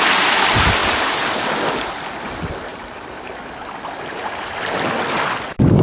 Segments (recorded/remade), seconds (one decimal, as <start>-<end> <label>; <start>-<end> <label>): 0.0-2.7 recorded; 2.7-3.3 remade; 3.3-5.8 recorded